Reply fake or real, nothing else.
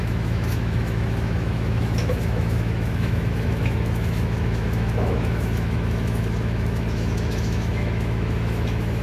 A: fake